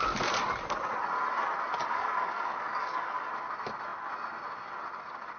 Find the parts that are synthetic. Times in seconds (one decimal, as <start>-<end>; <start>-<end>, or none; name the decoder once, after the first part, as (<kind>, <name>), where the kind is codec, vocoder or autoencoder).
1.8-3.3 (codec, DAC)